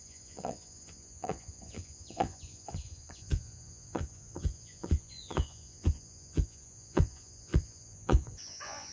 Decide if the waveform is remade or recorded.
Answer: remade